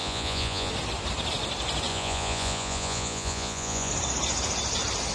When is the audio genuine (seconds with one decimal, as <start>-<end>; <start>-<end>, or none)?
0.7-1.9; 3.9-5.1